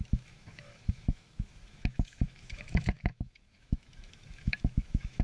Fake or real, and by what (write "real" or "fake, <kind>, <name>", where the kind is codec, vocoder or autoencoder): fake, autoencoder, DAC-VAE